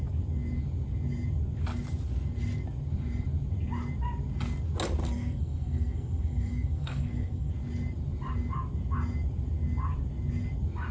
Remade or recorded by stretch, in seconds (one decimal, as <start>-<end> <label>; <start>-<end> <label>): 0.0-5.0 recorded; 5.0-7.5 remade; 7.5-10.9 recorded